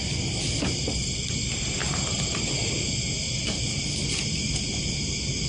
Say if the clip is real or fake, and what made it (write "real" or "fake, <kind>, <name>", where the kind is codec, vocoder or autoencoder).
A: real